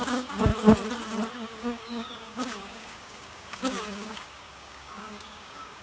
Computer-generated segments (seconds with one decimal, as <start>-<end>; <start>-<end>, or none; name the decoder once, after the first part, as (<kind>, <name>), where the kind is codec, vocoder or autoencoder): 0.0-0.5 (codec, DAC); 1.3-5.8

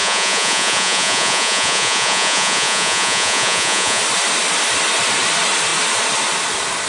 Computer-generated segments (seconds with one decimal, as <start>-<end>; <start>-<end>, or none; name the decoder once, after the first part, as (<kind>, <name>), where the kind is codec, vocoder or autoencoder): 0.0-4.0 (vocoder, Vocos)

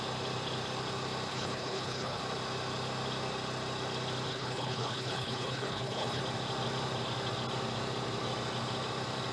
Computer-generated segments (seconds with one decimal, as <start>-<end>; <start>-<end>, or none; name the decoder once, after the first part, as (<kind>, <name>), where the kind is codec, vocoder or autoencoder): 1.3-2.2 (codec, HILCodec); 4.3-6.2

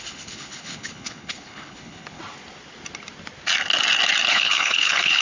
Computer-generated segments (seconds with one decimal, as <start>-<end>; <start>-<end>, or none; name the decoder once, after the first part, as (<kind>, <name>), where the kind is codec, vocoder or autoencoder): 0.0-2.2 (codec, HILCodec); 4.3-5.2

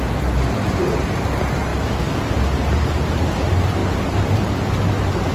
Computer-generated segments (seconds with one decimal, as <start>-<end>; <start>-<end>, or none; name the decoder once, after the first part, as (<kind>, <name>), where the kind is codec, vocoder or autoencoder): 3.8-4.5 (vocoder, BigVGAN v2)

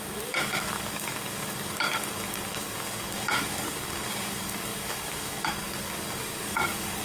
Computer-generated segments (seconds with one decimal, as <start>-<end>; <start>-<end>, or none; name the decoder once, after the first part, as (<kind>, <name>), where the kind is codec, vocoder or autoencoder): 0.0-7.0 (codec, DAC)

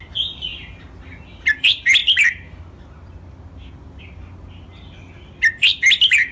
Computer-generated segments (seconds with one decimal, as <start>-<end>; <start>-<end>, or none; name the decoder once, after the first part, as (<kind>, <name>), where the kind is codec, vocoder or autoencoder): none

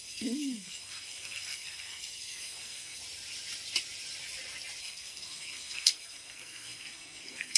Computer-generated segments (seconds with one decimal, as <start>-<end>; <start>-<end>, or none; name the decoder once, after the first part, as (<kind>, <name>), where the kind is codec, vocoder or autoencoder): 0.0-3.0 (codec, SNAC); 4.8-7.6